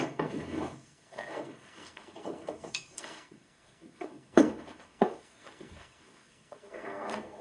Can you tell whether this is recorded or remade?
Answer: remade